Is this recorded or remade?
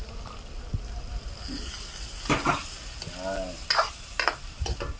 recorded